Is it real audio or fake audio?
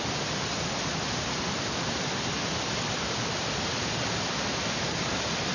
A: fake